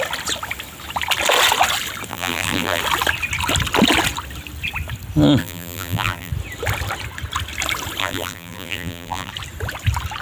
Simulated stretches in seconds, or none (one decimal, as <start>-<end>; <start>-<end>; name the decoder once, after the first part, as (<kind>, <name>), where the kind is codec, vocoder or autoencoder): 2.1-2.8 (vocoder, BigVGAN v2); 5.4-6.3; 8.0-9.3